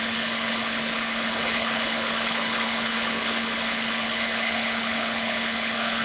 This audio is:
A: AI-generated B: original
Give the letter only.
A